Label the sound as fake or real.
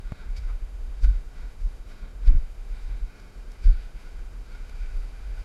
fake